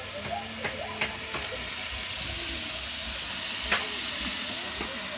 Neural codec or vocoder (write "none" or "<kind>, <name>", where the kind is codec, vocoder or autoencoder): none